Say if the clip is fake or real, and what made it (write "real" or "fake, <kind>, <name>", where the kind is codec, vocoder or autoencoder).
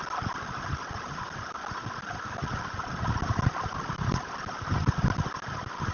real